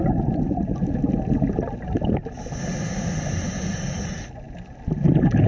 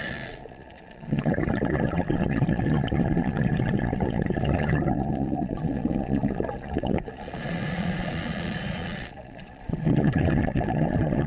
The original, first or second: first